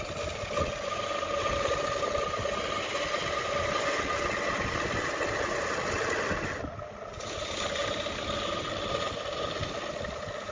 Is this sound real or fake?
real